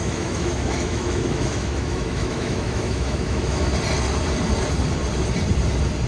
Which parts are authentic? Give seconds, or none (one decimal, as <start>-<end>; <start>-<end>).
3.7-6.1